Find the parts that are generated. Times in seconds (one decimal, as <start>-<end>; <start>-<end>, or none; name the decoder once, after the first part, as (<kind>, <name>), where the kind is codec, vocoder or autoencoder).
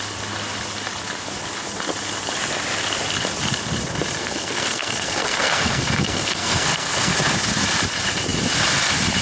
4.2-7.1 (codec, SNAC)